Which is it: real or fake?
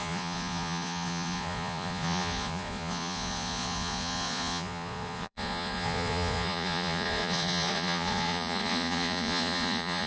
fake